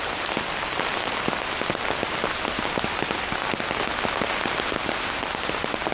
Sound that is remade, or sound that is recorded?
recorded